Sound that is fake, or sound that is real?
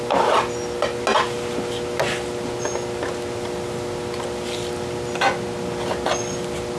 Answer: real